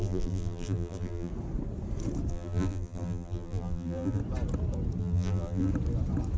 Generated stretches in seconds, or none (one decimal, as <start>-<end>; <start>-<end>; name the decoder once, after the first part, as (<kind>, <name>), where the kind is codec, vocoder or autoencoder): 0.0-1.3 (vocoder, BigVGAN v2); 2.3-4.2; 5.0-5.7